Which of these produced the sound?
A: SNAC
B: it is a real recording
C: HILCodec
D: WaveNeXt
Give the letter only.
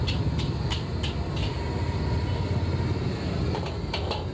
B